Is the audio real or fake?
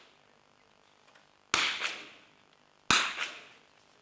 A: real